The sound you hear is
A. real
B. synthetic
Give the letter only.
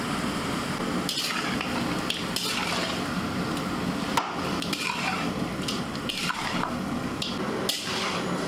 A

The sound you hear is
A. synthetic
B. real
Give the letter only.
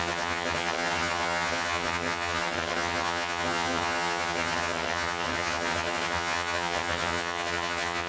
A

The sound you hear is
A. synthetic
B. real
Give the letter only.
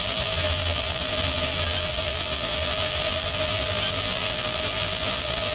A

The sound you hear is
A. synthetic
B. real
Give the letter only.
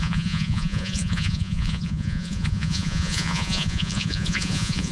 A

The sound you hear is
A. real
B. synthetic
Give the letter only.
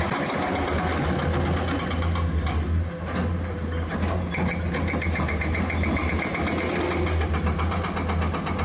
A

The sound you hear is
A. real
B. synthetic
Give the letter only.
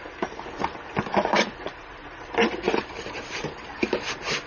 B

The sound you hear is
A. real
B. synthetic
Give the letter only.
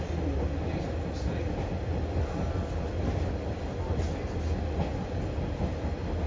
A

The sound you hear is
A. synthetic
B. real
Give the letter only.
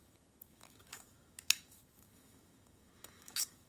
A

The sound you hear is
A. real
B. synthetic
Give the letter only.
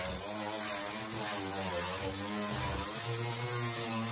A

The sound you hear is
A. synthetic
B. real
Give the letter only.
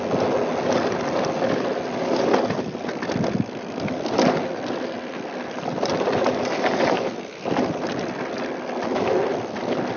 B